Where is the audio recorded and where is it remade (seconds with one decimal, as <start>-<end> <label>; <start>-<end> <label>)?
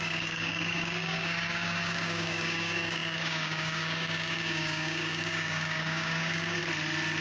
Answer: 0.0-6.6 remade; 6.6-7.2 recorded